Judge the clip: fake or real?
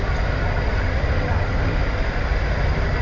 real